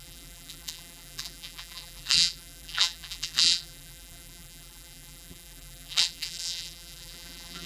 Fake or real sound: fake